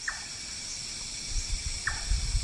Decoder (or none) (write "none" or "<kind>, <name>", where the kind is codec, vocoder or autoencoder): none